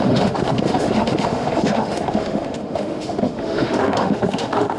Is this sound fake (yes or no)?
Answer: yes